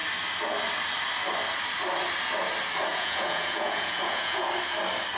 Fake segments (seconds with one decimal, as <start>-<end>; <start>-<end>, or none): 2.9-4.5